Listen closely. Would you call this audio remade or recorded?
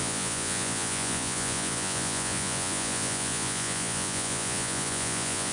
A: remade